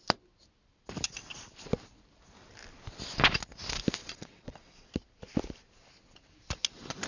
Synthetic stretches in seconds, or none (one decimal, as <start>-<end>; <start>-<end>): 4.0-4.9